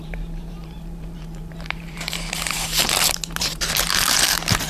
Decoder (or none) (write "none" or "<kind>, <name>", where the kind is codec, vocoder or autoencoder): vocoder, BigVGAN v2